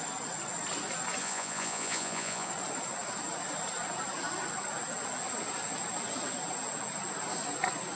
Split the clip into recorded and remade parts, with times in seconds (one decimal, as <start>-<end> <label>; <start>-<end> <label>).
0.0-1.2 recorded; 1.2-2.5 remade; 2.5-8.0 recorded